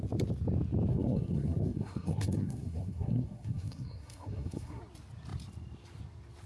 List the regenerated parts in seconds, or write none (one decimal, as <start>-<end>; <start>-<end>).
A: 0.9-4.8